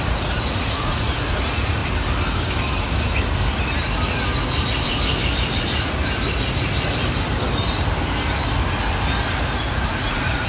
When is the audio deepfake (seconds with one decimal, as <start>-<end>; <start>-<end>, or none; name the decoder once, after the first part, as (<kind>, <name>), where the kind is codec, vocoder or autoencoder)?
0.0-1.8 (vocoder, Vocos); 5.6-6.0; 9.7-10.5